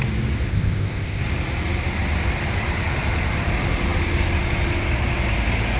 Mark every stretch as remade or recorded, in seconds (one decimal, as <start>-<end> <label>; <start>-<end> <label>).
0.0-0.5 recorded; 0.5-1.2 remade; 1.2-5.8 recorded